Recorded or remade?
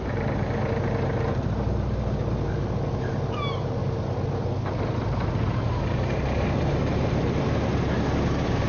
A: remade